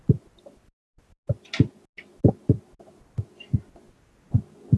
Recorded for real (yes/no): yes